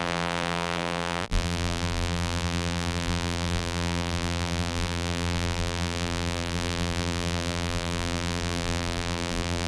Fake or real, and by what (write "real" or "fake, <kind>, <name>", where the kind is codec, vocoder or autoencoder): fake, vocoder, BigVGAN v2